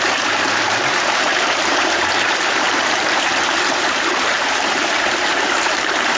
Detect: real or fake fake